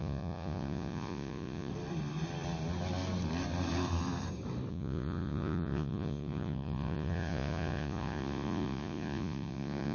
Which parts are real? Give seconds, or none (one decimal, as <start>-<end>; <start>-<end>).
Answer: 1.7-4.7